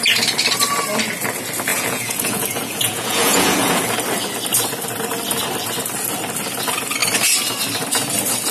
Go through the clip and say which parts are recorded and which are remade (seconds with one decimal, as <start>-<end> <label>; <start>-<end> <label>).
0.0-1.7 recorded; 1.7-3.8 remade; 3.8-8.5 recorded